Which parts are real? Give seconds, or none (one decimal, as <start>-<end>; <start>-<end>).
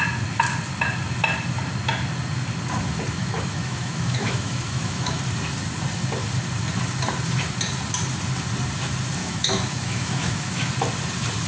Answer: 0.0-3.2; 5.2-9.2; 10.7-11.5